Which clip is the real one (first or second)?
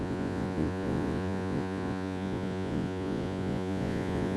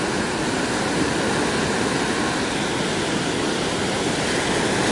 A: second